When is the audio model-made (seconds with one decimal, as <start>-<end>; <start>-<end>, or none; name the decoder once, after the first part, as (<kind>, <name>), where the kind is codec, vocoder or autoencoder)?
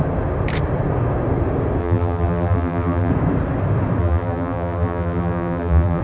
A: 1.8-3.1 (vocoder, BigVGAN v2); 4.0-6.0